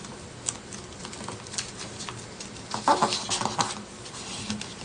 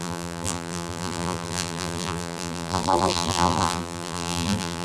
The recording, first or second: first